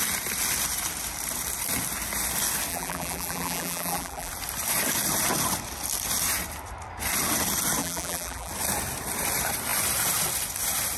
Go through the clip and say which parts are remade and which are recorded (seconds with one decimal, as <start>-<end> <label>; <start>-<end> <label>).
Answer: 0.0-2.7 recorded; 2.7-4.3 remade; 4.3-7.8 recorded; 7.8-8.5 remade; 8.5-11.0 recorded